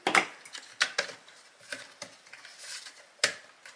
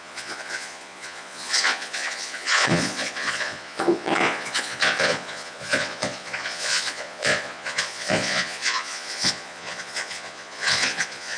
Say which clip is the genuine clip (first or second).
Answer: first